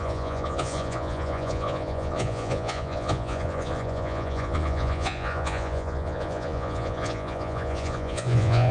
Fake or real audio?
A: fake